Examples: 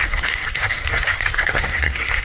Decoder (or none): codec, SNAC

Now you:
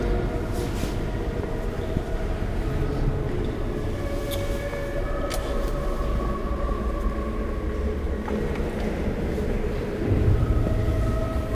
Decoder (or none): none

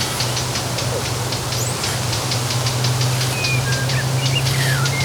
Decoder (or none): none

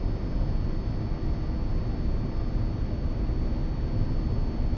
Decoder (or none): none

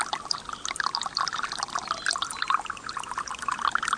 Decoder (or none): none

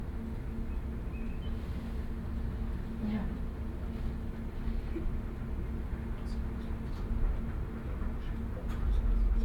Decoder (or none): none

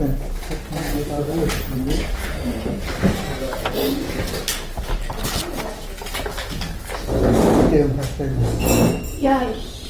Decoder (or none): none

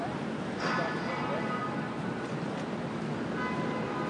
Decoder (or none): none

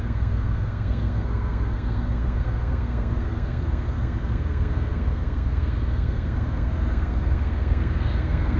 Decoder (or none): codec, SNAC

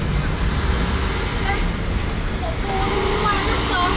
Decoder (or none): none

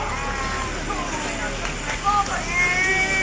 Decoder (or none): none